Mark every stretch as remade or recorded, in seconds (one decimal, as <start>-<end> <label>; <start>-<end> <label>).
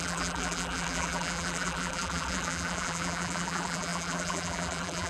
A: 0.0-5.1 remade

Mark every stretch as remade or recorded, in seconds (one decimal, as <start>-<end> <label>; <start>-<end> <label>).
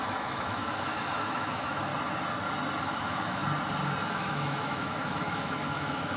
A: 0.0-1.9 remade; 1.9-2.8 recorded; 2.8-3.4 remade; 3.4-4.1 recorded; 4.1-6.2 remade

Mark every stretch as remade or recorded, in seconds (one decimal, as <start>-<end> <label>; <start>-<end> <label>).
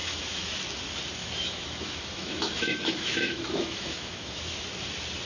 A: 0.0-0.5 remade; 0.5-1.2 recorded; 1.2-4.4 remade; 4.4-5.3 recorded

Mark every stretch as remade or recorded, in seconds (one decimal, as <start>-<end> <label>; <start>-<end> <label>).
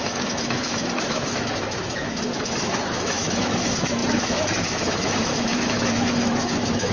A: 0.0-6.9 remade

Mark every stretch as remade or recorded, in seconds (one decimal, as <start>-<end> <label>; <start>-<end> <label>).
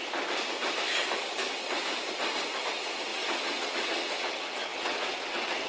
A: 0.0-2.6 recorded; 2.6-5.7 remade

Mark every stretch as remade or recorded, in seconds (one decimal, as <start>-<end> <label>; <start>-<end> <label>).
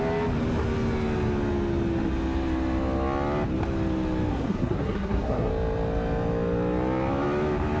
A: 0.0-4.3 recorded; 4.3-5.5 remade; 5.5-7.8 recorded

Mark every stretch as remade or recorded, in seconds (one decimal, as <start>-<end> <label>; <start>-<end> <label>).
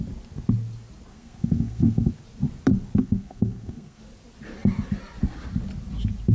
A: 0.0-1.1 recorded; 1.1-2.1 remade; 2.1-3.0 recorded; 3.0-4.0 remade; 4.0-6.3 recorded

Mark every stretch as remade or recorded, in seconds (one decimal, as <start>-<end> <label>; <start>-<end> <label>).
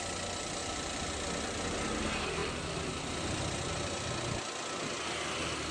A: 0.0-5.7 recorded